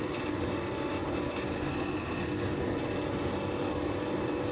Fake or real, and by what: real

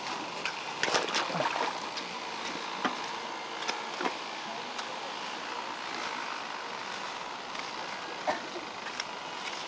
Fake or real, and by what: real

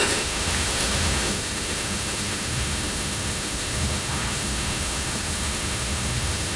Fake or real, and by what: fake, autoencoder, DAC-VAE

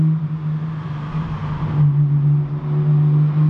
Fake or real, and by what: real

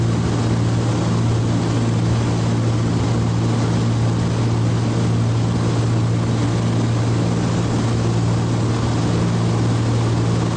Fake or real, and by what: real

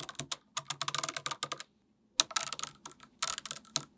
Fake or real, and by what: real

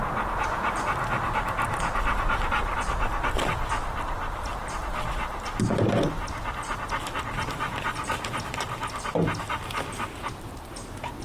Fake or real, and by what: real